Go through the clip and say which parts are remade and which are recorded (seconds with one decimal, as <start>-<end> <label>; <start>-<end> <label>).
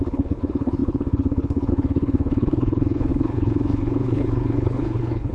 0.0-5.3 remade